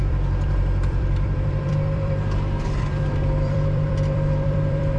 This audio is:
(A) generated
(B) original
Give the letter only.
A